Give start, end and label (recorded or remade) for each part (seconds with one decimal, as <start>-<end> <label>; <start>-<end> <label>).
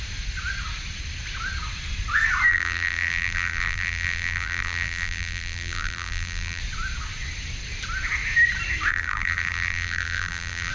0.0-2.5 recorded; 2.5-6.6 remade; 6.6-8.9 recorded; 8.9-10.7 remade